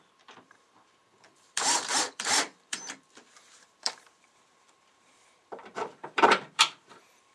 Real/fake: fake